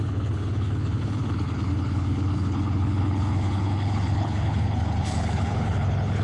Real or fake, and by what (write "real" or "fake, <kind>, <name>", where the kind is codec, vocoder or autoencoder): fake, codec, HILCodec